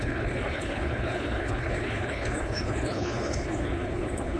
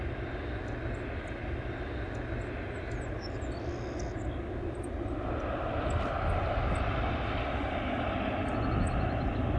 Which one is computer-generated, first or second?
first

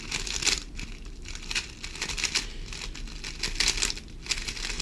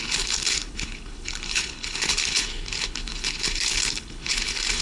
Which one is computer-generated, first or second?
second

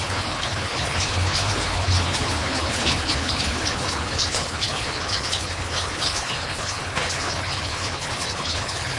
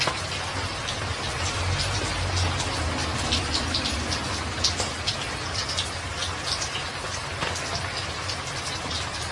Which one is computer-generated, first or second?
first